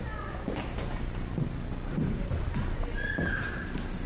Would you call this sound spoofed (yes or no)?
no